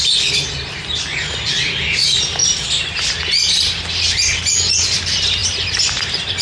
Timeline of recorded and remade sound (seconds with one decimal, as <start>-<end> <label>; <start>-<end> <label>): 0.0-6.4 recorded